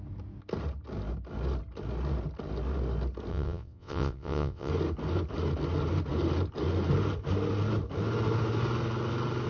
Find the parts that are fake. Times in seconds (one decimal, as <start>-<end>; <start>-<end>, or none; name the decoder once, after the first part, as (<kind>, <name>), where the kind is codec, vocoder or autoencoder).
3.3-4.7 (vocoder, WaveNeXt)